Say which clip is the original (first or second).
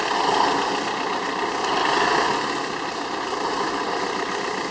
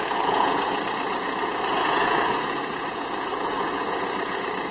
first